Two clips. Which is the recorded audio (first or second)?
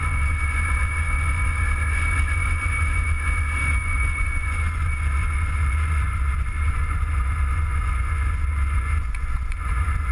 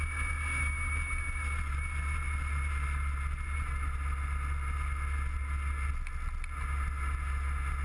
second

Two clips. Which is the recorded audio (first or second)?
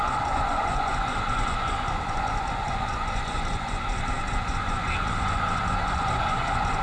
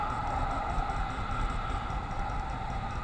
second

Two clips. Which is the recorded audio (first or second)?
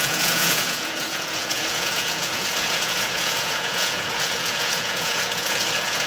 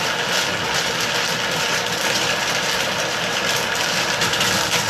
second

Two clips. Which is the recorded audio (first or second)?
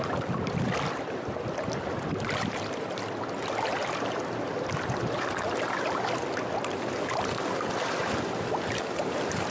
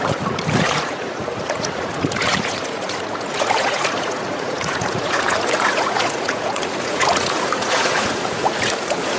first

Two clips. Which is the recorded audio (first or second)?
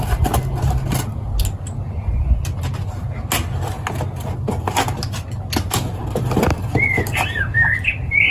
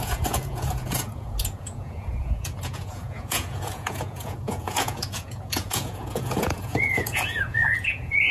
first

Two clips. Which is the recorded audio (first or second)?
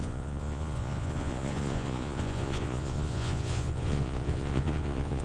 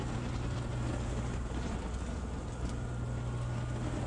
second